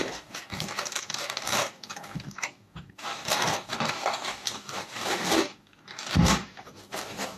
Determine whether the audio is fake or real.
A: fake